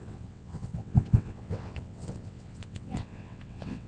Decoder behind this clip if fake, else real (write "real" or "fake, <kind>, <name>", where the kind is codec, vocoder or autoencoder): fake, vocoder, WaveNeXt